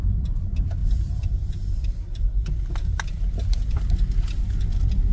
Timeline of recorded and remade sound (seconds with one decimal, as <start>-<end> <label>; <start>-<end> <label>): 0.0-0.8 recorded; 0.8-3.9 remade; 3.9-5.1 recorded